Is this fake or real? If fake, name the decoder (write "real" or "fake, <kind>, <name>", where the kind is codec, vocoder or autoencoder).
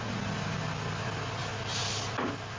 real